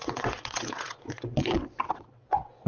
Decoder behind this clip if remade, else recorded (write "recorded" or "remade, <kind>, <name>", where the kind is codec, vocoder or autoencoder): remade, vocoder, WaveNeXt